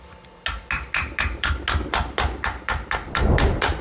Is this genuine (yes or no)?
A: yes